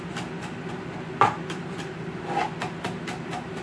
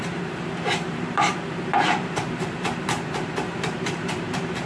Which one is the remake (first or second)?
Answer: second